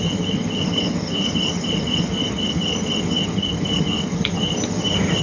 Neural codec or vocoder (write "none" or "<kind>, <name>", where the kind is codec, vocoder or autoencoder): vocoder, HiFi-GAN